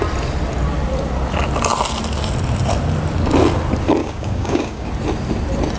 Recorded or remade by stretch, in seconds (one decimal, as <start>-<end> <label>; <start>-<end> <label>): 0.0-4.0 recorded; 4.0-4.9 remade; 4.9-5.8 recorded